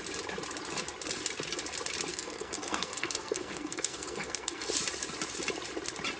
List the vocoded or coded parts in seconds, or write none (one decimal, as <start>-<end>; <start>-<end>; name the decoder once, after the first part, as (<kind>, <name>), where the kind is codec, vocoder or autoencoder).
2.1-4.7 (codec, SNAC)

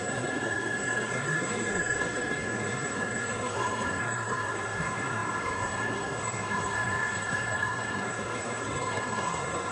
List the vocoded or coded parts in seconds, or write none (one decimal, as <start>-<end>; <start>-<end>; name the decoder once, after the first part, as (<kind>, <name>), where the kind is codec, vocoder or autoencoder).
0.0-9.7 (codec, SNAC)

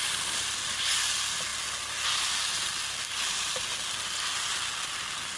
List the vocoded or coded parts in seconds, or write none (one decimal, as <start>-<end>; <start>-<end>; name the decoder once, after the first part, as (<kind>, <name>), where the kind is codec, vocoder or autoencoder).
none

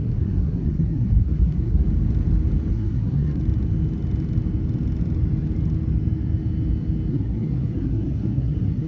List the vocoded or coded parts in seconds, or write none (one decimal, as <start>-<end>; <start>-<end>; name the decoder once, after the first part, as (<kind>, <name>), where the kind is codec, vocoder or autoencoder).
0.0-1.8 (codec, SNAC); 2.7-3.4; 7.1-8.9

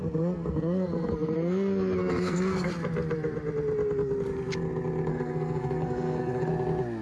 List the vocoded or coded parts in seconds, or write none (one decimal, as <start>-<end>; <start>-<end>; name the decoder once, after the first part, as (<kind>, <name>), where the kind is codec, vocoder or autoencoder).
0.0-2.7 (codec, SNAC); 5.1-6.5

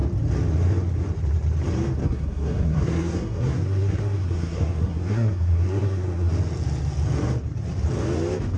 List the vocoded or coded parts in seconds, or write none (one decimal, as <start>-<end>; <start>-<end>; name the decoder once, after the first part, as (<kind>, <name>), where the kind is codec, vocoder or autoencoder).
2.0-6.3 (codec, SNAC)

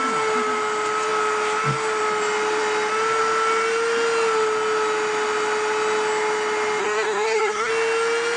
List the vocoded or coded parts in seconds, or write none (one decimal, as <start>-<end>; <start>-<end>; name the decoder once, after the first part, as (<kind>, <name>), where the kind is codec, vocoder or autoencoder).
6.8-7.7 (codec, SNAC)